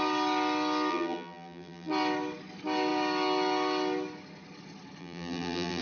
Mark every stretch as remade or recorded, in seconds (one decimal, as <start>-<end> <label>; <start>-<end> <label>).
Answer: 0.0-0.9 recorded; 0.9-1.9 remade; 1.9-5.0 recorded; 5.0-5.8 remade